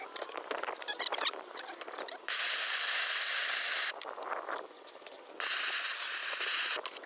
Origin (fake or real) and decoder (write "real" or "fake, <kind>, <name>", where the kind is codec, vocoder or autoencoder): fake, vocoder, BigVGAN v2